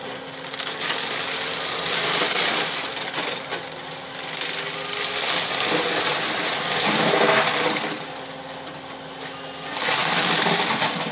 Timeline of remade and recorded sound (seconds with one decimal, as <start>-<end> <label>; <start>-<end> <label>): 0.0-10.0 recorded; 10.0-11.1 remade